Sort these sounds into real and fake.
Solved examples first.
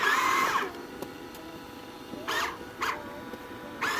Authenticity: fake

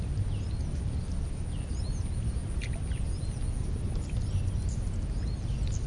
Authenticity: real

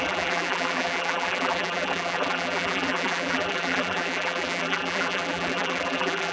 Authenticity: fake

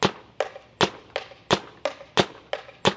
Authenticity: real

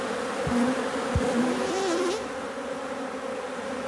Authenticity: fake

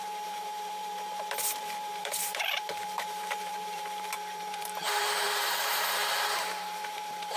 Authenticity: fake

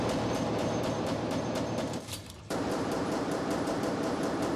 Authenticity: fake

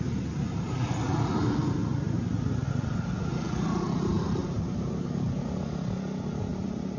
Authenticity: real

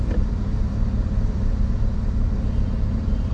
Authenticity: fake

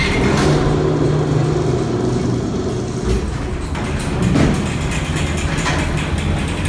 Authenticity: real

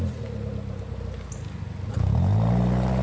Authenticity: real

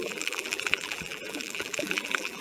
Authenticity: fake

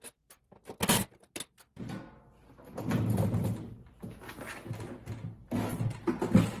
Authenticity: real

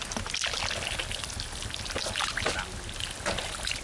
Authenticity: real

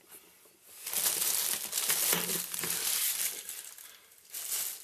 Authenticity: real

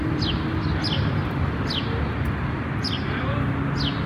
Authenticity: real